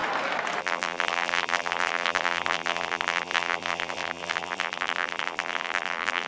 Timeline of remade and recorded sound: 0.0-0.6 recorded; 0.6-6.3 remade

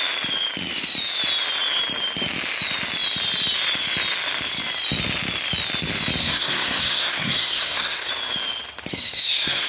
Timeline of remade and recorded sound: 0.0-6.2 recorded; 6.2-8.1 remade; 8.1-8.9 recorded; 8.9-9.7 remade

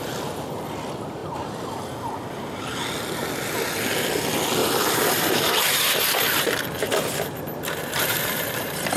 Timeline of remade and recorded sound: 0.0-4.6 recorded; 4.6-9.0 remade

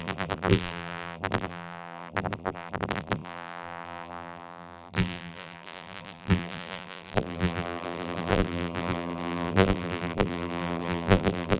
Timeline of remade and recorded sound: 0.0-11.6 remade

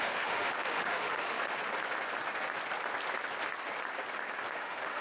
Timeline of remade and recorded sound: 0.0-1.5 remade; 1.5-4.5 recorded; 4.5-5.0 remade

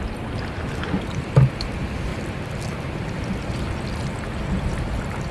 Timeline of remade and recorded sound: 0.0-5.3 recorded